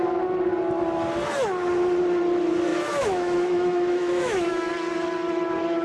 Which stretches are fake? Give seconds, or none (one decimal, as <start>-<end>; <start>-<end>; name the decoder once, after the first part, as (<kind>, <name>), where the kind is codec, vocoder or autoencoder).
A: 2.7-4.7 (autoencoder, DAC-VAE)